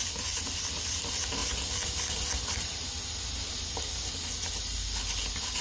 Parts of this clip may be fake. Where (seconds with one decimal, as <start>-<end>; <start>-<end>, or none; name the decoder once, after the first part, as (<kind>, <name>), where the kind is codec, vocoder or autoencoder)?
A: none